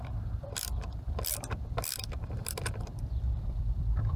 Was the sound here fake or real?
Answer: fake